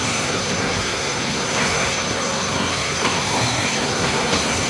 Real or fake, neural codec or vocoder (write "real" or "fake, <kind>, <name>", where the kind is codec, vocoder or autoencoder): fake, codec, SNAC